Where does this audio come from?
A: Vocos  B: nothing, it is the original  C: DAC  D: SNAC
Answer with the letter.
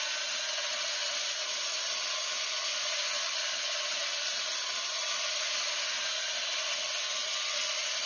B